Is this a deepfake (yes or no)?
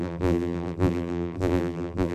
yes